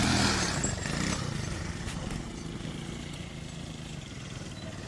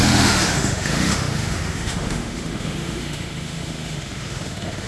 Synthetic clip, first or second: second